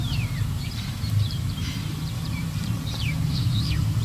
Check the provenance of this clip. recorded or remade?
remade